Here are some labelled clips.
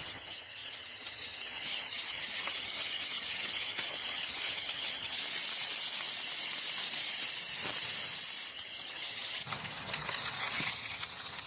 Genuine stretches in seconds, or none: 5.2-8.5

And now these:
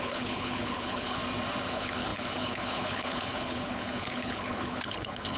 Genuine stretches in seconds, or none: 1.2-1.7

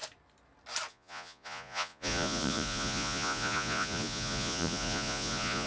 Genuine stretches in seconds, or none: 0.0-0.9

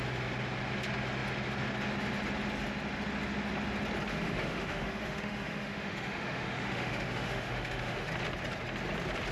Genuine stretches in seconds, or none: 0.0-4.1; 8.1-9.3

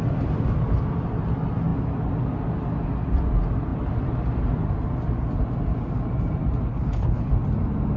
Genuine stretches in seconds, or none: 0.0-6.7; 7.3-8.0

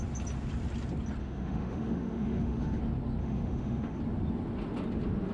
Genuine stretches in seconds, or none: 0.0-1.2; 2.8-3.2; 4.0-5.3

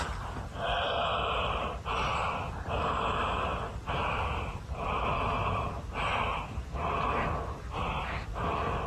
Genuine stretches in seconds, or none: 0.0-3.2; 5.8-8.9